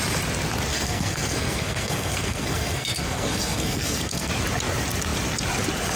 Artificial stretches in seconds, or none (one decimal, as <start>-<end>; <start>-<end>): 0.7-4.3